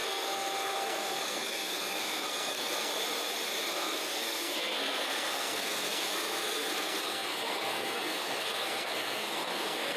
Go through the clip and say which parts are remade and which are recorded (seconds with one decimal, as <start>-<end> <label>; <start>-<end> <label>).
0.0-2.9 remade; 2.9-3.7 recorded; 3.7-10.0 remade